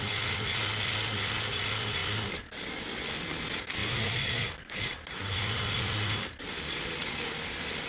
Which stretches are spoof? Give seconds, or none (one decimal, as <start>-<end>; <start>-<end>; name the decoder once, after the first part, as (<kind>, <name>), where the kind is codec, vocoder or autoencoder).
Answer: none